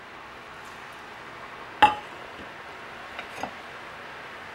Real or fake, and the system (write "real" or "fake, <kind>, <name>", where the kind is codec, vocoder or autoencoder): real